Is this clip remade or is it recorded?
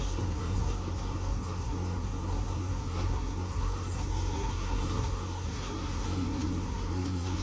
remade